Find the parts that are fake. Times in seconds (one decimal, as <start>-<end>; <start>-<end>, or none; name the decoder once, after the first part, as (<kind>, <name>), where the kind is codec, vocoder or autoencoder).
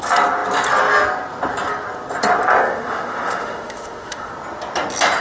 2.7-4.3 (autoencoder, DAC-VAE)